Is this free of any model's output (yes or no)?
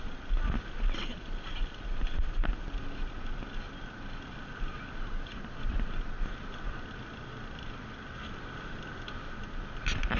yes